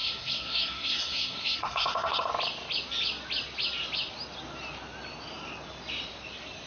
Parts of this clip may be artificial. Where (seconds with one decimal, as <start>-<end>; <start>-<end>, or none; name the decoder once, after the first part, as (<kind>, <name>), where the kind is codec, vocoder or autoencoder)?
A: 0.0-2.3 (codec, SNAC)